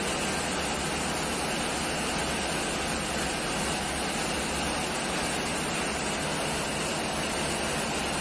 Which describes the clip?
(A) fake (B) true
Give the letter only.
B